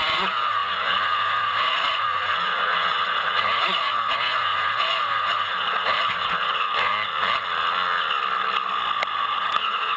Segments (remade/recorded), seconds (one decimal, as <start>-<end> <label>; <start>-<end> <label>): 0.0-6.9 remade; 6.9-9.2 recorded; 9.2-10.0 remade